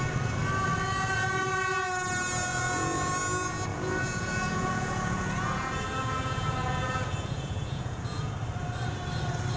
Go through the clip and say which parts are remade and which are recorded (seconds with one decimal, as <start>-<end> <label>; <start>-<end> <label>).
0.0-2.5 recorded; 2.5-3.1 remade; 3.1-3.7 recorded; 3.7-8.3 remade; 8.3-9.6 recorded